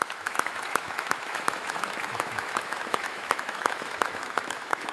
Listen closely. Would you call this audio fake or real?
fake